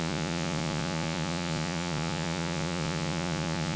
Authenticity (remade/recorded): remade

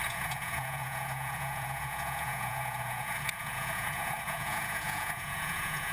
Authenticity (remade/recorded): remade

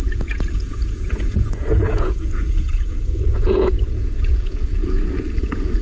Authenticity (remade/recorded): remade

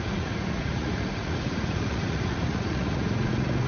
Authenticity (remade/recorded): remade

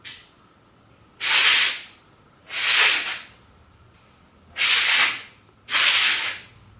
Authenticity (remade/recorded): recorded